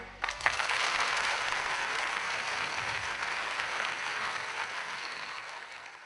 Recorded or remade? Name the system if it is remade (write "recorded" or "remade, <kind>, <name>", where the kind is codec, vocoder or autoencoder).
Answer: remade, codec, SNAC